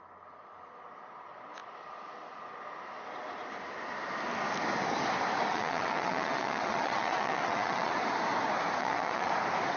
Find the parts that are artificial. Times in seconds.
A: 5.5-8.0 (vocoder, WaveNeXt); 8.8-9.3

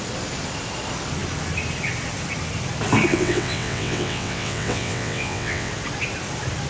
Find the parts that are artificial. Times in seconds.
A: 3.1-5.7 (vocoder, WaveNeXt)

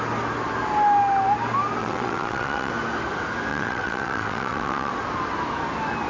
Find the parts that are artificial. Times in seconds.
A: 1.8-2.7 (vocoder, WaveNeXt); 3.5-4.9

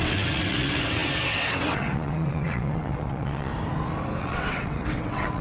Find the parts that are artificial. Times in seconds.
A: 0.0-3.5 (vocoder, WaveNeXt); 4.2-5.4

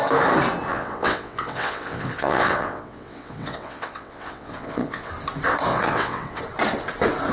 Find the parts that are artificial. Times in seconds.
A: 0.7-5.1 (vocoder, WaveNeXt); 5.7-6.4

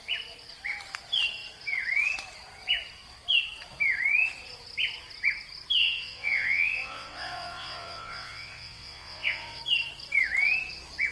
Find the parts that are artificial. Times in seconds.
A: 5.8-9.6 (vocoder, WaveNeXt)

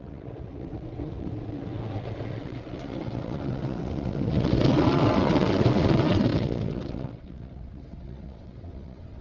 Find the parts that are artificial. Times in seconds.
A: 0.0-9.2 (vocoder, WaveNeXt)

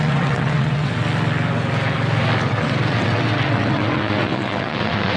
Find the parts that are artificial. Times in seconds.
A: 0.0-0.9 (vocoder, WaveNeXt); 2.5-5.2